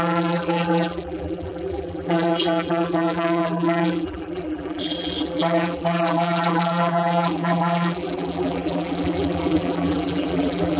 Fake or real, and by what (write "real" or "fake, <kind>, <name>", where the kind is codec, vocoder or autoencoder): fake, vocoder, BigVGAN v2